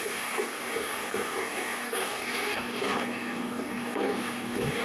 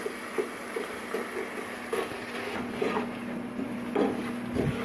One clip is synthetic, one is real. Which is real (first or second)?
second